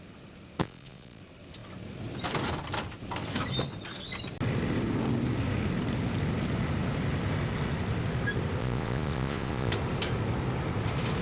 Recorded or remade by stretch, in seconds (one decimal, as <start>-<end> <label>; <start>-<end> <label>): 0.0-0.6 recorded; 0.6-1.2 remade; 1.2-8.6 recorded; 8.6-9.7 remade; 9.7-11.2 recorded